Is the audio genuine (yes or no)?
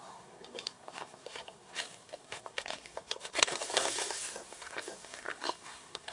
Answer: no